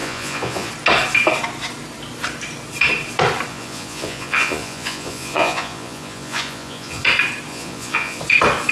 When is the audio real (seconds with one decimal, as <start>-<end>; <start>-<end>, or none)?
0.7-3.5; 7.0-7.5; 8.2-8.7